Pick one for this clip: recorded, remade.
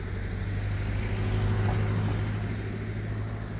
recorded